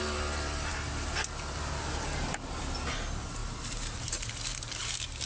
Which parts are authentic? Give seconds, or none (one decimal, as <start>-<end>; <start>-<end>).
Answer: 0.0-5.3